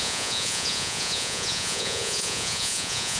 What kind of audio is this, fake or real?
fake